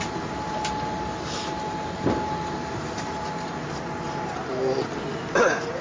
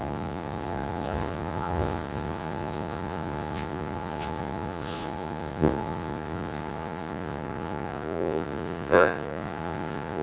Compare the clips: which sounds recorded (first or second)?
first